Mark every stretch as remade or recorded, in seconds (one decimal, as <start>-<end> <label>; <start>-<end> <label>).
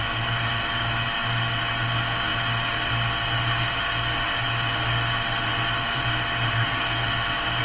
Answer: 0.0-7.6 recorded